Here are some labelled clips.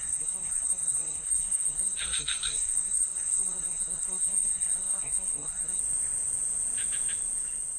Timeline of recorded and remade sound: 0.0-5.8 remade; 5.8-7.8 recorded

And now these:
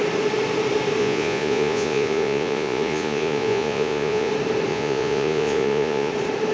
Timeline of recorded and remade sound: 0.0-1.0 recorded; 1.0-4.3 remade; 4.3-4.7 recorded; 4.7-6.1 remade; 6.1-6.5 recorded

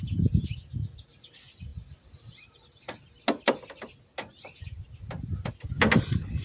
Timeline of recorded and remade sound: 0.0-6.4 recorded

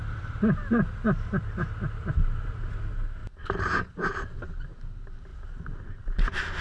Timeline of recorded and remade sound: 0.0-3.2 recorded; 3.2-4.5 remade; 4.5-5.3 recorded; 5.3-6.0 remade; 6.0-6.6 recorded

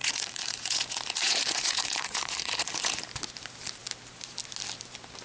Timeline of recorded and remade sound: 0.0-3.0 remade; 3.0-5.2 recorded

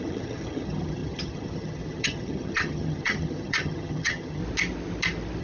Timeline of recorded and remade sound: 0.0-4.4 remade; 4.4-5.4 recorded

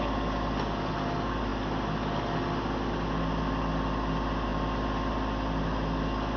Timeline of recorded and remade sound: 0.0-6.4 recorded

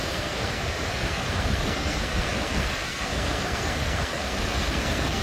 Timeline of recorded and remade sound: 0.0-5.2 remade